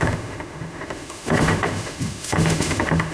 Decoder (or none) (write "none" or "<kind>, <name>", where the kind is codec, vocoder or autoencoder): autoencoder, DAC-VAE